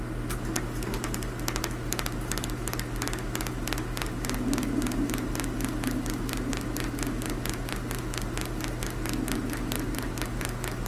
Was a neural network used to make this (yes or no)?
no